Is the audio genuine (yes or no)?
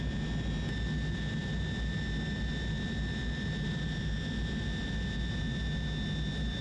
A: yes